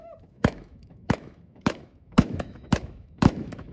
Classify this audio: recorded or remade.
remade